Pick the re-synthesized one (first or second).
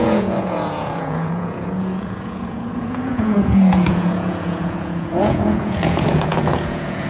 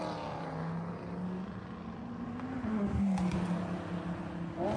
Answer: first